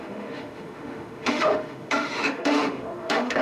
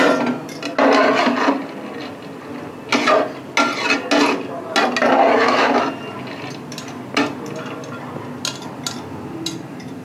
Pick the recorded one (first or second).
second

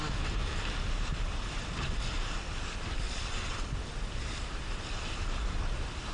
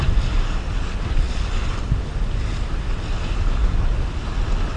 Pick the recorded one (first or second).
second